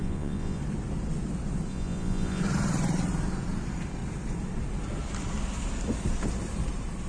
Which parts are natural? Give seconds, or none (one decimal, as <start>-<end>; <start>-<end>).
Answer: 0.6-1.7; 2.4-7.1